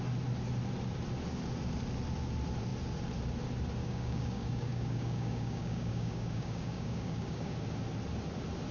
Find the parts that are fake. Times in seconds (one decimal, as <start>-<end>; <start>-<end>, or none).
3.8-7.5